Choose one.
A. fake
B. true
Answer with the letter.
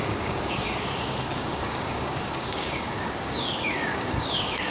A